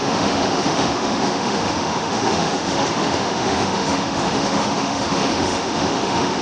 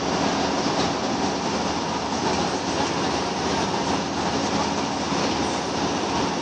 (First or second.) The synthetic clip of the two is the first